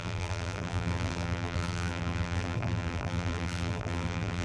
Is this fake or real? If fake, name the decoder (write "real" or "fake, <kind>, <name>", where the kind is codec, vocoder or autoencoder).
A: fake, vocoder, BigVGAN v2